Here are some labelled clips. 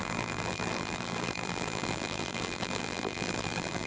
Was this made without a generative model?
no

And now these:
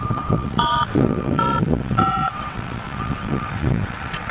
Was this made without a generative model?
no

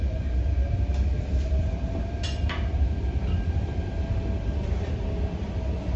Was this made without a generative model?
yes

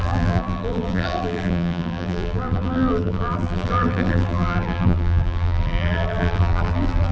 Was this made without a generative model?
no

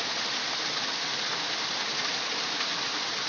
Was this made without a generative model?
yes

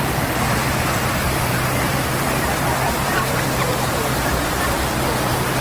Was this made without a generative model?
no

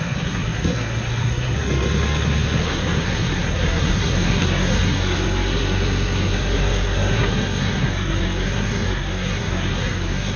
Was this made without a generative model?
no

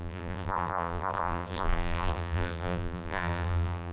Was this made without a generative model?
no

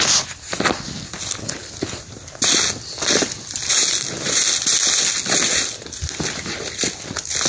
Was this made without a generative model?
yes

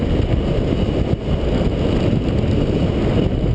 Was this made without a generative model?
yes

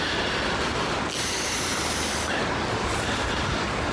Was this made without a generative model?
yes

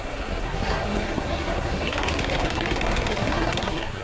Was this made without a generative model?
no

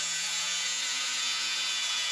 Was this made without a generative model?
no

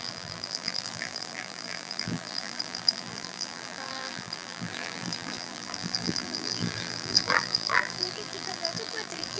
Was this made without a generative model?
no